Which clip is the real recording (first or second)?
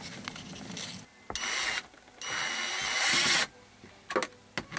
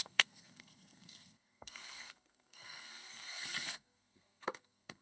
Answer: first